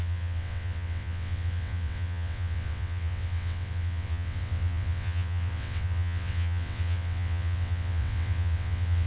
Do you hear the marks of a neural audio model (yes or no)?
yes